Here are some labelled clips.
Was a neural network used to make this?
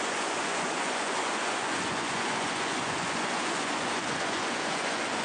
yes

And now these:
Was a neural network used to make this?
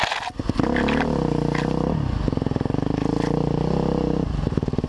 no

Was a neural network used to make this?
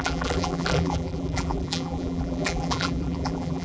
yes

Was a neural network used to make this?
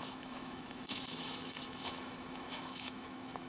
yes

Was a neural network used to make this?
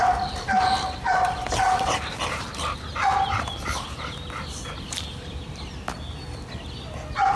no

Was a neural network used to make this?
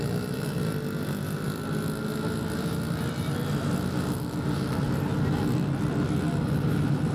no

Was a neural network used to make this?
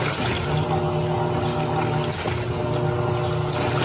no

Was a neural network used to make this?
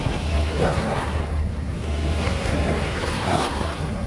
yes